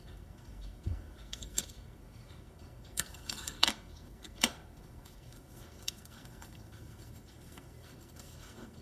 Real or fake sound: fake